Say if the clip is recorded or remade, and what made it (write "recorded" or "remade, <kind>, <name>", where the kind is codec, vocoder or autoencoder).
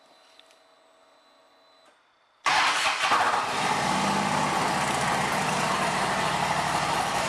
remade, vocoder, BigVGAN v2